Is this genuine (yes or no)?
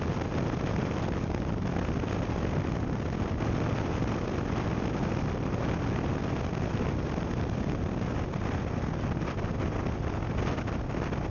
yes